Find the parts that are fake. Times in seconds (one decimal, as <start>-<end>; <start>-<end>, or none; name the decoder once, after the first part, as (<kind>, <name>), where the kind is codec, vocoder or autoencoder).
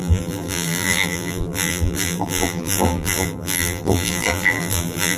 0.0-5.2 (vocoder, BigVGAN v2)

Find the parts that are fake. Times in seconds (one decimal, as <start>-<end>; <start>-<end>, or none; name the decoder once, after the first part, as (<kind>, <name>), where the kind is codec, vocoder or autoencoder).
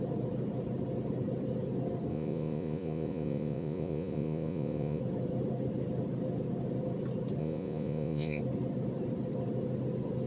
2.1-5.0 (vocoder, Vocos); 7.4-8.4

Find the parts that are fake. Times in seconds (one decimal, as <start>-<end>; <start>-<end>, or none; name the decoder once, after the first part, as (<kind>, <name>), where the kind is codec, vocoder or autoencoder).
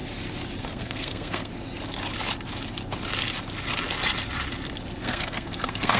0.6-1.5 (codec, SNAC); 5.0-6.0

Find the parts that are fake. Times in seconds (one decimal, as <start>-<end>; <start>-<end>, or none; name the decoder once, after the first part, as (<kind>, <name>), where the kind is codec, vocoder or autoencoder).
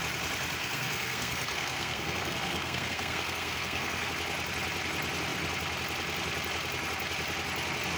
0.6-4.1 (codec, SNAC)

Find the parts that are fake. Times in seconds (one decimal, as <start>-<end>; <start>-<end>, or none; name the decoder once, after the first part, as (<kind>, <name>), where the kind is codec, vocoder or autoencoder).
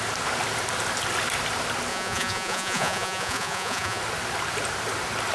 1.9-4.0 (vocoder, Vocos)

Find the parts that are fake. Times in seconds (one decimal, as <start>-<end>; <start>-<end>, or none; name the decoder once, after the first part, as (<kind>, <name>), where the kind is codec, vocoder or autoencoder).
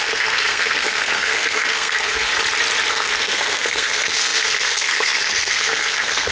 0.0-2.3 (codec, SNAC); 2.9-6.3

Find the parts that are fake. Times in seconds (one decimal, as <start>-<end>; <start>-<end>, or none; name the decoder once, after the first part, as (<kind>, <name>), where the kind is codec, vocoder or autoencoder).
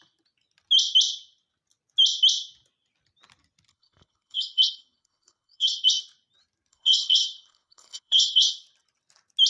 3.7-6.0 (codec, HILCodec); 6.7-8.5